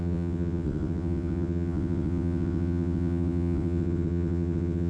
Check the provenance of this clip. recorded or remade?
remade